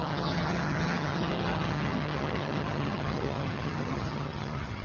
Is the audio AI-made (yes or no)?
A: yes